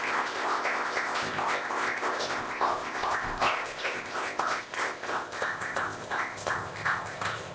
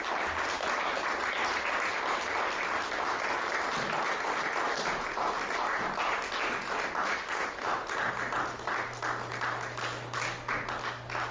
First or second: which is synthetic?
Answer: first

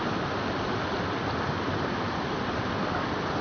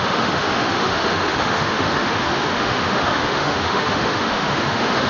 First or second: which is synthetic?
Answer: second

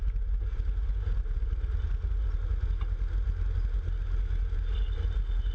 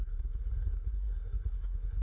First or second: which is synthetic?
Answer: second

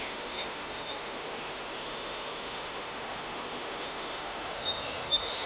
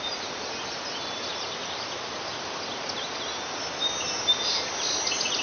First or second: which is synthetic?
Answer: first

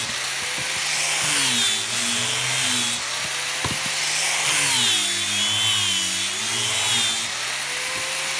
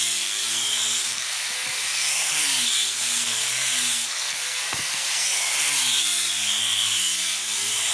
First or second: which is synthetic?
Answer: second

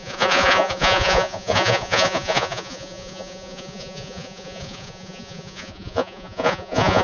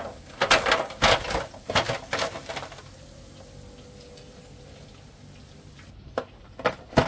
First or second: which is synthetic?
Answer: first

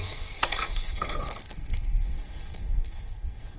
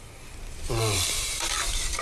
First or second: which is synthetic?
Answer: first